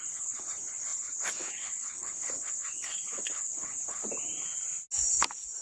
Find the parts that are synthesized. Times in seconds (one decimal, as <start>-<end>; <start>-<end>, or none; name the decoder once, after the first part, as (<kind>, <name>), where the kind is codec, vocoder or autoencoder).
0.0-4.0 (codec, HILCodec)